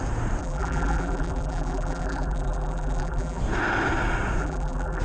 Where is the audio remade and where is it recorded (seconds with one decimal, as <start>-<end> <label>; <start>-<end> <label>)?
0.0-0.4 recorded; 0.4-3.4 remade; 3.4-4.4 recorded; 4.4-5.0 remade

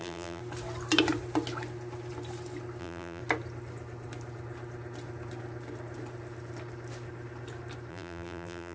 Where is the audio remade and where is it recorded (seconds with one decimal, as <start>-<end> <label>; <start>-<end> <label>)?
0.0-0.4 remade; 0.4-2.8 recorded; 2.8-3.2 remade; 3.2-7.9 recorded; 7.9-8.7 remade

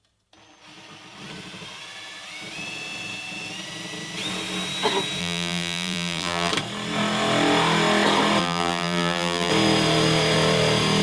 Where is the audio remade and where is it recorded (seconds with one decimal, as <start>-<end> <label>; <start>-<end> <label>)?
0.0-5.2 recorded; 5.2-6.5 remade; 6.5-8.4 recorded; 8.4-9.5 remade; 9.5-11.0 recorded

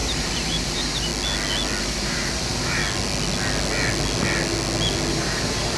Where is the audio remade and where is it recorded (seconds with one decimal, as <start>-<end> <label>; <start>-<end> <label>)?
0.0-1.1 remade; 1.1-1.8 recorded; 1.8-2.8 remade; 2.8-5.1 recorded; 5.1-5.8 remade